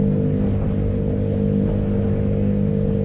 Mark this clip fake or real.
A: real